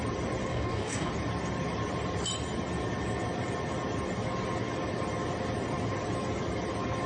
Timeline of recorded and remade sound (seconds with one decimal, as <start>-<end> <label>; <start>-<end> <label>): 0.0-0.5 recorded; 0.5-1.1 remade; 1.1-7.1 recorded